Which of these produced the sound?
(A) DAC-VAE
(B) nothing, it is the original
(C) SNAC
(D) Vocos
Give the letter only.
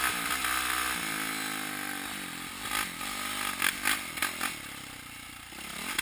B